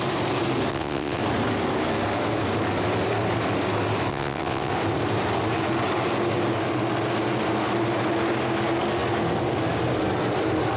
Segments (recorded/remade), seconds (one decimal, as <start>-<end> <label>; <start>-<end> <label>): 0.0-0.7 recorded; 0.7-1.2 remade; 1.2-4.1 recorded; 4.1-4.7 remade; 4.7-10.8 recorded